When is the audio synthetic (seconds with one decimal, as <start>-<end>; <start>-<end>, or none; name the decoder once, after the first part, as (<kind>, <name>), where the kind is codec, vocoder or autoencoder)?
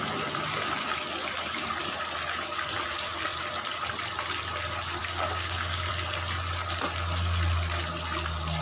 5.0-5.9 (codec, DAC)